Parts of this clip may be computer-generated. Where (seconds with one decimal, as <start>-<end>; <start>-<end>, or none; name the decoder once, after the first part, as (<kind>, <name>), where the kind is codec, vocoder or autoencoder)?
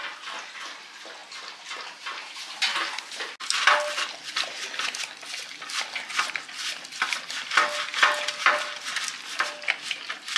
none